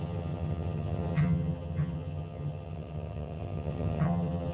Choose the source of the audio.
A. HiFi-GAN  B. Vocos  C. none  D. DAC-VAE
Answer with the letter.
A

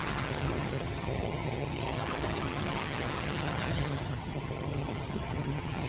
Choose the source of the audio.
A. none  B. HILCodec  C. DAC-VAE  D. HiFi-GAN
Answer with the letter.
D